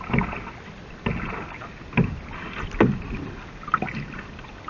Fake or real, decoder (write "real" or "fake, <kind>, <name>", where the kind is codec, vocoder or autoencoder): real